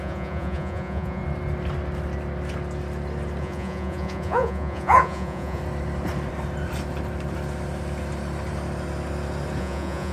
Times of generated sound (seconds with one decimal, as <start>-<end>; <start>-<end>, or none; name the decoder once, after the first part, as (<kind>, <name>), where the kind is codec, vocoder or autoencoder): 0.0-1.2 (vocoder, Vocos); 3.4-5.6; 9.6-10.1